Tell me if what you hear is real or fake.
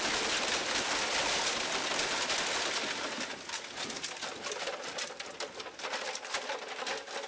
real